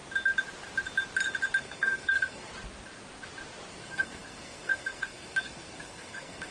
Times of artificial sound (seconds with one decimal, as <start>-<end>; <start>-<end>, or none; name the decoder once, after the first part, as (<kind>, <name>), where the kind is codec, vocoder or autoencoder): 1.6-2.5 (codec, SNAC); 3.7-6.5